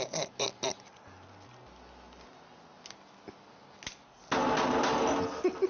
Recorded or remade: recorded